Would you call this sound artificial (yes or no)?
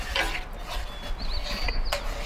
no